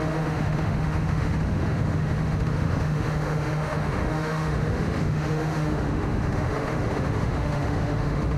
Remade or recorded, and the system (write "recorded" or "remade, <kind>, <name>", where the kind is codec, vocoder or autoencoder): remade, autoencoder, DAC-VAE